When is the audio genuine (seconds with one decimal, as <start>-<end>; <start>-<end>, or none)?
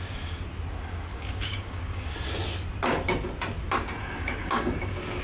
0.0-1.1; 2.1-4.0